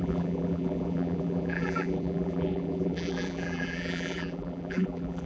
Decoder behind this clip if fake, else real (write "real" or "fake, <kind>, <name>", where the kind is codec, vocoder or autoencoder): fake, vocoder, BigVGAN v2